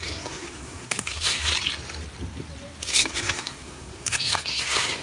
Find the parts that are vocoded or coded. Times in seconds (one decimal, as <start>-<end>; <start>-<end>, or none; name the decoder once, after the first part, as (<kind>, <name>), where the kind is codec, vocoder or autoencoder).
0.0-1.5 (codec, SNAC); 2.8-5.0